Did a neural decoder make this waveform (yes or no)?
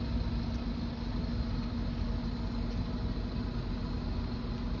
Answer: no